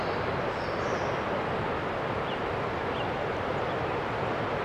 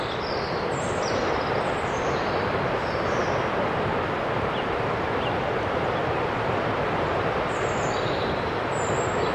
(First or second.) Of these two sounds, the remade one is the second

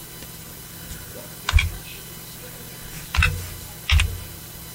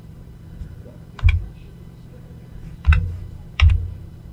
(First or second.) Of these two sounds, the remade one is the second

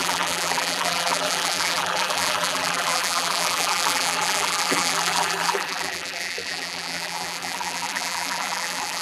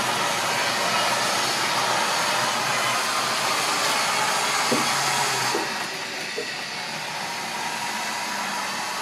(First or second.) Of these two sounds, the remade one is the first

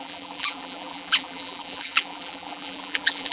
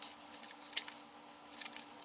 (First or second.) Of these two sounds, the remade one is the first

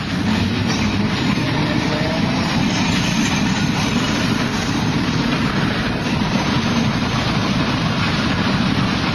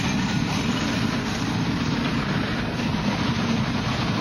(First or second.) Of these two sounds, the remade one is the first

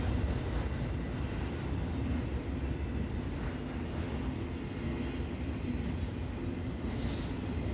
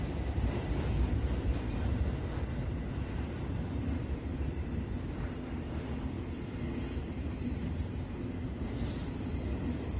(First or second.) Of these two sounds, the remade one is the second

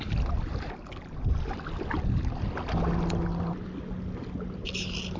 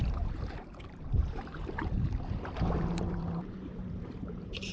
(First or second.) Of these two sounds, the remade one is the second